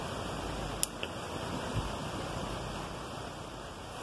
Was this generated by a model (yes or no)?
no